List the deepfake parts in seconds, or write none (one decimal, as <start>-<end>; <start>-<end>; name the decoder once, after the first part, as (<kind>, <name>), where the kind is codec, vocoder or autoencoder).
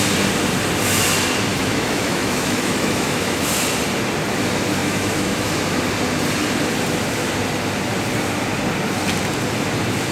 1.5-3.4 (autoencoder, DAC-VAE); 4.8-5.5